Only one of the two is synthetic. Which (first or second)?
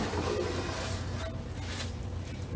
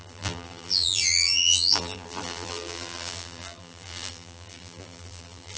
second